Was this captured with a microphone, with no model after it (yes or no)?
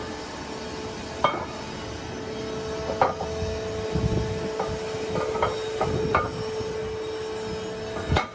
yes